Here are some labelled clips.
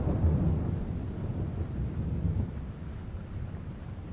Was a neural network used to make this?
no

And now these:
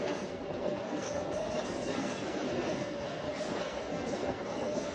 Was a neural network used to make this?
yes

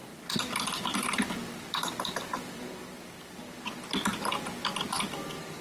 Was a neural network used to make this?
no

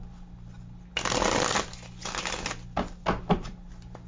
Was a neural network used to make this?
no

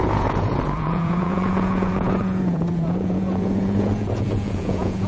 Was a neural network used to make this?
yes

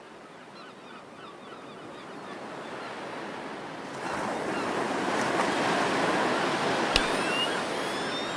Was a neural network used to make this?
no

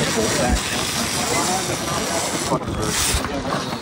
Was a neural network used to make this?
no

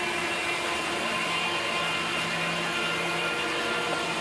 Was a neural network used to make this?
no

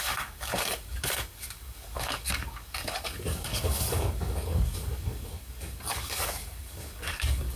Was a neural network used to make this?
yes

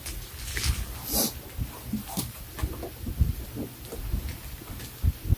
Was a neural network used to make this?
no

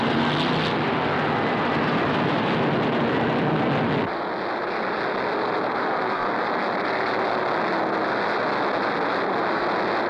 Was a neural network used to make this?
no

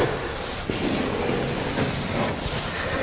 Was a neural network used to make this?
no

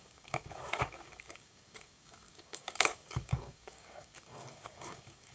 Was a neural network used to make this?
yes